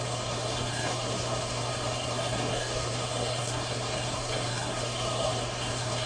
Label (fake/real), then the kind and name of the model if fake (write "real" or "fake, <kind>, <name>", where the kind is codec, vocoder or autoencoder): fake, codec, SNAC